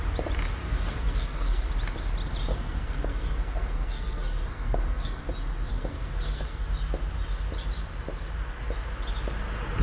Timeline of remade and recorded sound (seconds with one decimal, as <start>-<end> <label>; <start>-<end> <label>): 0.0-0.6 recorded; 0.6-1.7 remade; 1.7-2.5 recorded; 2.5-5.2 remade; 5.2-5.7 recorded; 5.7-6.6 remade; 6.6-9.8 recorded